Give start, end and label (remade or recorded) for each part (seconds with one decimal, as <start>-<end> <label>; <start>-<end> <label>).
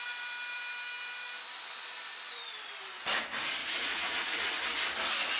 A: 0.0-3.6 recorded; 3.6-4.6 remade; 4.6-5.4 recorded